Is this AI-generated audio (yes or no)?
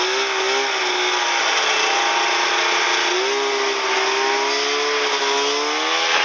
no